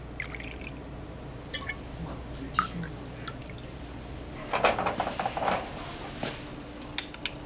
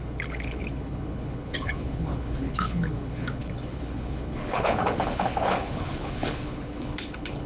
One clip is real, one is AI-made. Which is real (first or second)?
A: first